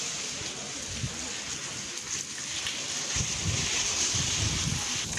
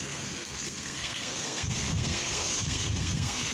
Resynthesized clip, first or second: second